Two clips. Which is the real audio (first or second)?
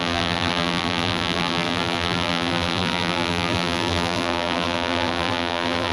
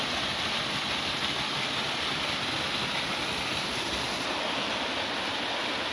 second